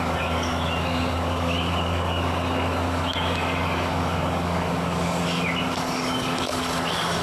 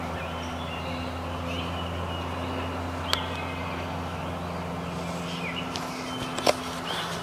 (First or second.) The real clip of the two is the second